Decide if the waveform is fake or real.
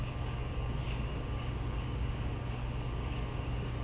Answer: fake